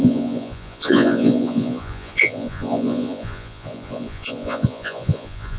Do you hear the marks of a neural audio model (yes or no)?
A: yes